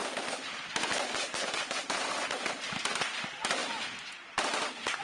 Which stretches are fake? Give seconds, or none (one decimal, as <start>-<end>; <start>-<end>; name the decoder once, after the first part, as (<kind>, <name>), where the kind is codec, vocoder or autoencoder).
none